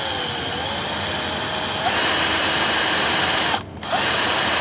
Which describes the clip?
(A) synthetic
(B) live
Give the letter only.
B